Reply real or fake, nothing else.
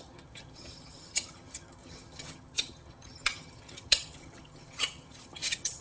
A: fake